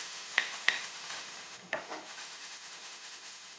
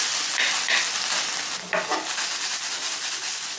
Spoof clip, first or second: first